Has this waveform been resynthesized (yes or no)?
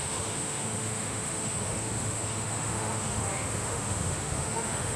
yes